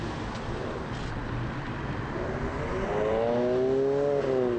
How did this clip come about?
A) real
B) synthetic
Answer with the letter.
A